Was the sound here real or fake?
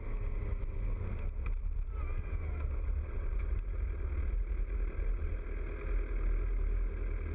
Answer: real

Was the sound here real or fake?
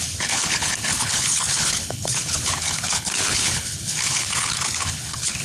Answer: fake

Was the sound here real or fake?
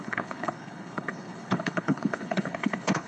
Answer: fake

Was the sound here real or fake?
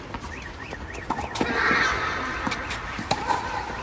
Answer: real